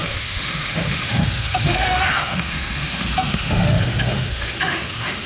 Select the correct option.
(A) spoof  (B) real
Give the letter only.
A